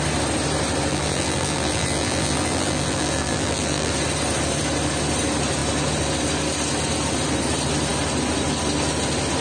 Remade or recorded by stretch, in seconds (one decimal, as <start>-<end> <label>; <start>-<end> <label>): 0.0-0.9 recorded; 0.9-3.9 remade; 3.9-9.4 recorded